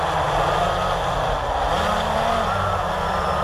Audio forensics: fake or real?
real